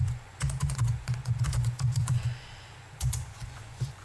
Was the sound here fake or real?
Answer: fake